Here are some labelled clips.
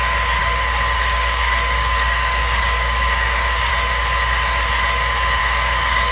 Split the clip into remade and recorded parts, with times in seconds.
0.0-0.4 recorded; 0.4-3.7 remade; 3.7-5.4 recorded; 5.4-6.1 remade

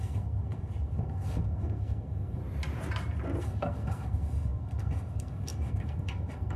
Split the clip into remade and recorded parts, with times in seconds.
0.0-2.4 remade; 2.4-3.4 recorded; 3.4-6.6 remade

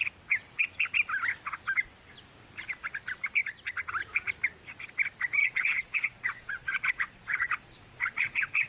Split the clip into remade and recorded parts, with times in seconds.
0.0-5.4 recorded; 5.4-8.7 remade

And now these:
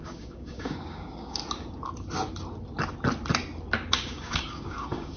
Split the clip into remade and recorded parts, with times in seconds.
0.0-1.4 remade; 1.4-3.9 recorded; 3.9-5.2 remade

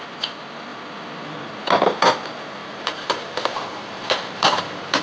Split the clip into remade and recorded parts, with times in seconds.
0.0-2.6 recorded; 2.6-5.0 remade